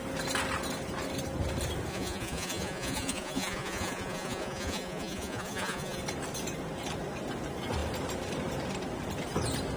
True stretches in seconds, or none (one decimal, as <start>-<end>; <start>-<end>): 0.0-1.9; 6.0-9.8